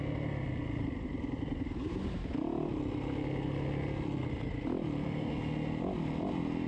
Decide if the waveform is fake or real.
real